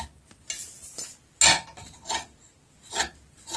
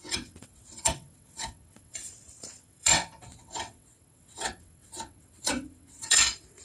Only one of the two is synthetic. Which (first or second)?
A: second